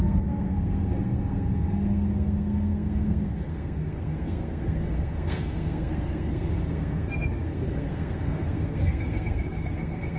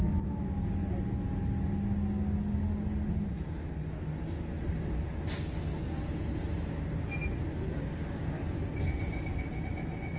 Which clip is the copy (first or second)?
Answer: first